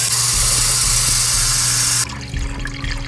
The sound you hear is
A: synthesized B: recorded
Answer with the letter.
B